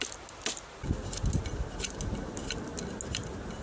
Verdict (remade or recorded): recorded